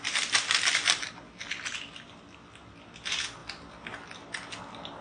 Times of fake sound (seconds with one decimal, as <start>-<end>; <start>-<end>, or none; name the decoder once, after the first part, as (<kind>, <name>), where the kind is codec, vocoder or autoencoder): none